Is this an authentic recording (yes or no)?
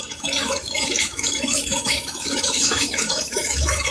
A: no